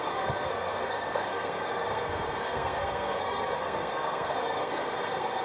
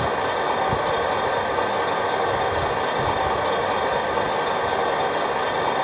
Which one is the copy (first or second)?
first